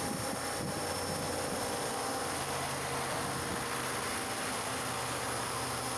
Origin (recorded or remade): recorded